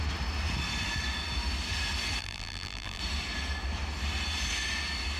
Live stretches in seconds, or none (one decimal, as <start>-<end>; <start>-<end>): 0.0-2.2; 3.0-5.2